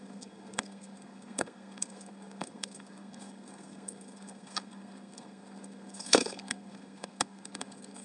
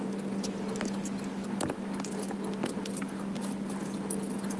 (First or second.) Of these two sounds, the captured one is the second